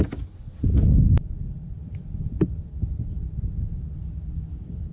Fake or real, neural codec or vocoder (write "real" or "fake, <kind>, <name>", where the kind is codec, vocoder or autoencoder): real